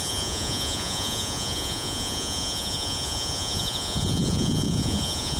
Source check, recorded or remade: remade